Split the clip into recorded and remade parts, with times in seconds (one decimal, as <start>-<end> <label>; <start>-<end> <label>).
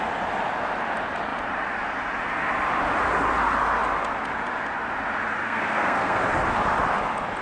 0.0-5.4 recorded; 5.4-6.2 remade; 6.2-7.4 recorded